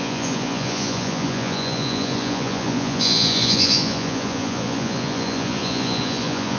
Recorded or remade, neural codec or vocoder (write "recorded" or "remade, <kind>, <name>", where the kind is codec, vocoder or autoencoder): remade, vocoder, Vocos